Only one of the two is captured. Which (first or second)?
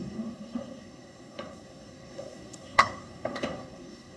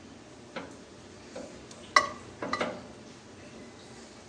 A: second